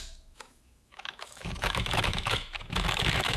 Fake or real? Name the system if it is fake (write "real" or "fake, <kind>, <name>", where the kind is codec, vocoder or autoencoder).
fake, autoencoder, DAC-VAE